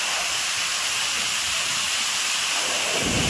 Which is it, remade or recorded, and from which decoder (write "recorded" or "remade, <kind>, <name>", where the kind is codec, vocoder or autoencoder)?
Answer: recorded